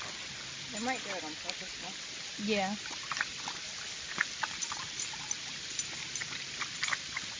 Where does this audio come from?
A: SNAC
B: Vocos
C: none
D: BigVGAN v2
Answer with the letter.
C